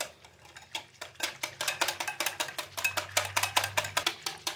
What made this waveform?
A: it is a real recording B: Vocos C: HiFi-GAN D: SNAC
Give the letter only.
A